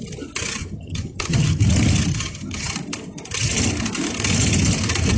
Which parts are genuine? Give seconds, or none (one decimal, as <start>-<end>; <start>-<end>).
0.0-0.6; 1.6-2.1; 2.7-5.2